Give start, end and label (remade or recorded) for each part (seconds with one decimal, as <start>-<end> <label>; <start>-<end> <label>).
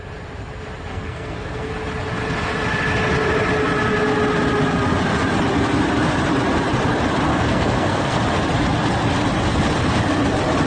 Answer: 0.0-0.9 recorded; 0.9-1.7 remade; 1.7-7.3 recorded; 7.3-8.2 remade; 8.2-10.7 recorded